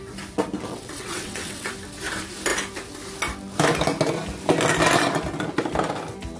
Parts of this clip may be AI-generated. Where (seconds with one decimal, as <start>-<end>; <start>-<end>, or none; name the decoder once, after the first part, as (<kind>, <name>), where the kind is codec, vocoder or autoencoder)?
0.7-1.7 (vocoder, WaveNeXt)